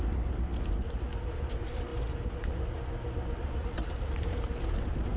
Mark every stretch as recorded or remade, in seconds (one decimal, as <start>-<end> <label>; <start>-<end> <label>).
0.0-5.2 recorded